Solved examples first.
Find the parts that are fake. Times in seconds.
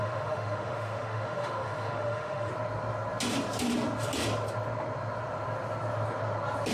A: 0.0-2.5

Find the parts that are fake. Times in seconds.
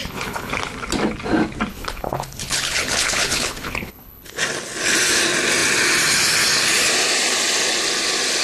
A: 0.0-0.5; 1.7-4.4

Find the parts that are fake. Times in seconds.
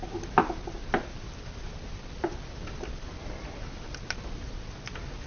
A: none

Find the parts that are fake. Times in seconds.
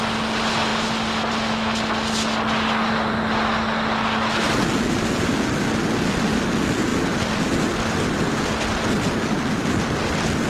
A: none